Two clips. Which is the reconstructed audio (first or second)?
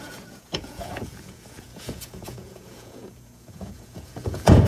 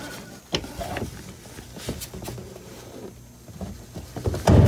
first